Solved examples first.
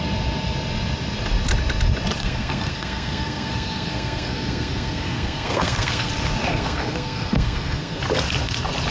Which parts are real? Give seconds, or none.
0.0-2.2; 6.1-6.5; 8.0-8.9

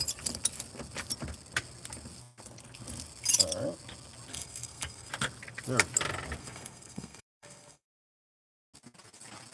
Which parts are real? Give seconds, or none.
0.0-4.3; 5.1-6.4; 8.2-9.5

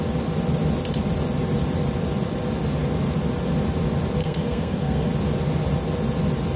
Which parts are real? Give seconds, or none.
0.0-4.2; 5.1-6.6

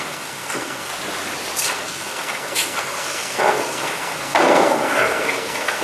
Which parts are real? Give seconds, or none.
0.9-1.6

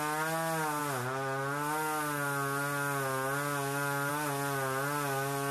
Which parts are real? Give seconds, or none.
0.0-5.5

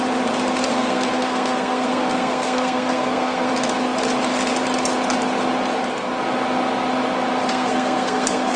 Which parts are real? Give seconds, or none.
0.0-0.7; 3.5-7.5

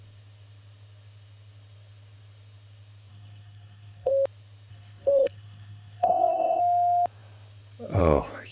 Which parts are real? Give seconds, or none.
0.0-3.1; 4.1-4.7; 6.6-8.5

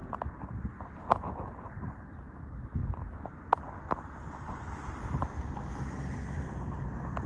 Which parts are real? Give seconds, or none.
0.0-7.3